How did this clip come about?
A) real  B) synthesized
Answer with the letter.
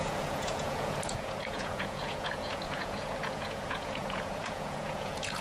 B